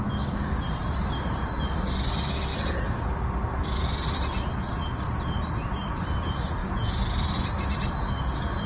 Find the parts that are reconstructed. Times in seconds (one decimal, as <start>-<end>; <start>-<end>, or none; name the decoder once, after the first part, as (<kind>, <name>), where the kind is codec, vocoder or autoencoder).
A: none